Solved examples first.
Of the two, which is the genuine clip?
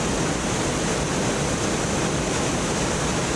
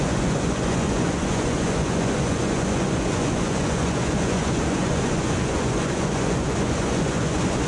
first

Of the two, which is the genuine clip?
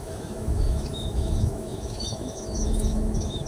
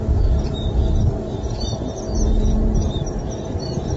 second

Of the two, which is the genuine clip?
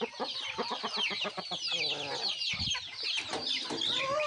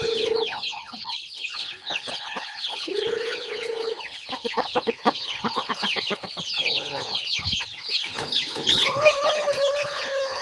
first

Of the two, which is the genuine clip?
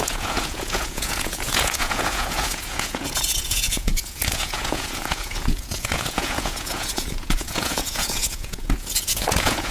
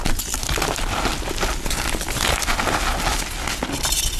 second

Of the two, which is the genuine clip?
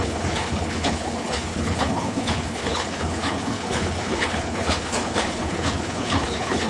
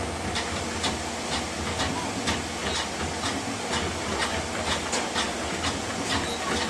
second